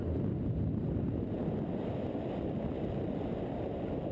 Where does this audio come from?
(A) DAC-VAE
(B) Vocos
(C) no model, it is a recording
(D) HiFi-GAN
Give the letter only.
C